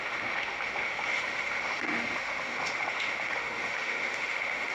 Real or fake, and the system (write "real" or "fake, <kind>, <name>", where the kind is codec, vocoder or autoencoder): fake, autoencoder, DAC-VAE